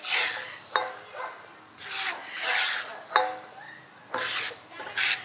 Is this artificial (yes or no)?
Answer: no